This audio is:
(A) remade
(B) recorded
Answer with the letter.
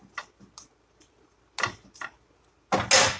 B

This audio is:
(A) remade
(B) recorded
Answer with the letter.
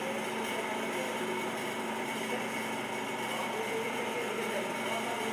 B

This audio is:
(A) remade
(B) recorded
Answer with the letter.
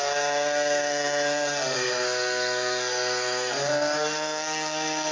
A